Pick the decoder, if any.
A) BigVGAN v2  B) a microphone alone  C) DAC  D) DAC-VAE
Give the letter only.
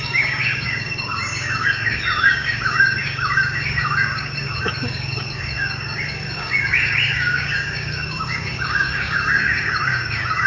C